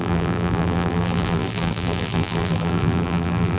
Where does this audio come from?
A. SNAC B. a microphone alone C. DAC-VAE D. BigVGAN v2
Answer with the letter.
D